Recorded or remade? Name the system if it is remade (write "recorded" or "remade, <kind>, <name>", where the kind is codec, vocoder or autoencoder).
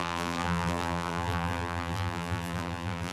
remade, vocoder, BigVGAN v2